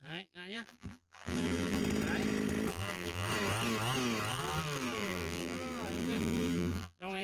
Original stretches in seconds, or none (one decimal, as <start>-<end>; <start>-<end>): 1.8-2.7; 3.3-4.3